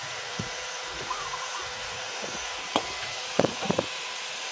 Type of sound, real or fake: fake